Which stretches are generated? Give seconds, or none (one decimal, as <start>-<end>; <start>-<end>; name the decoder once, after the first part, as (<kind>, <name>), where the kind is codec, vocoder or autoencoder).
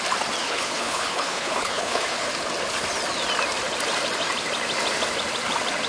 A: 0.4-2.3 (codec, HILCodec)